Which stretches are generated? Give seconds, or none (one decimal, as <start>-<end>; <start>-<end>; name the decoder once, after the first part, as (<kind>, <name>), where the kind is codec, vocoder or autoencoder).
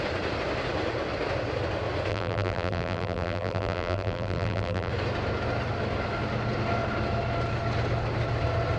2.1-4.9 (vocoder, BigVGAN v2)